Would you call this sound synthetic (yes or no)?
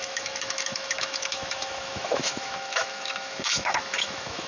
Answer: yes